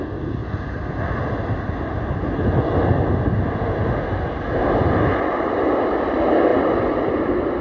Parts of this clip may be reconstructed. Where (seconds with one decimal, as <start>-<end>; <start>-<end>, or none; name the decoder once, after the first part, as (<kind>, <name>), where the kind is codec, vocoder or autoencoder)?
none